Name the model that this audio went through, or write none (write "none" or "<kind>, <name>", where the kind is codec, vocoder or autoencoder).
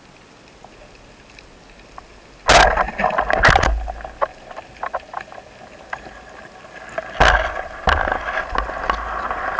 none